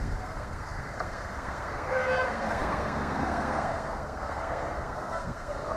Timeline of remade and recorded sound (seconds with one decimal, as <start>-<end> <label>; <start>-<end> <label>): 0.0-5.8 remade